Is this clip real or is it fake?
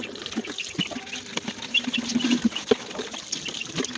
real